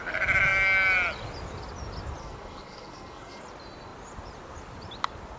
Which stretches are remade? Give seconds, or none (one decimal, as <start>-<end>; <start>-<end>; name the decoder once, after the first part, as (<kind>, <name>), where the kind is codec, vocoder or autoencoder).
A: 2.2-3.4 (codec, SNAC)